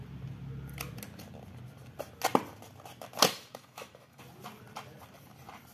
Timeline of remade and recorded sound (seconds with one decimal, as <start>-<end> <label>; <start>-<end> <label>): 0.0-3.3 recorded; 3.3-4.2 remade; 4.2-5.7 recorded